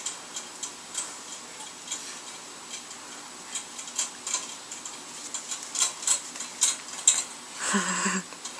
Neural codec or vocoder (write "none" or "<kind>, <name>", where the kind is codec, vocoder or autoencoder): none